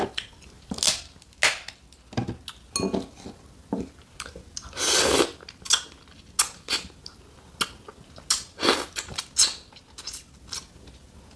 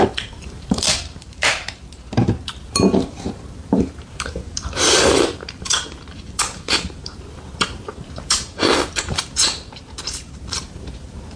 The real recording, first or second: first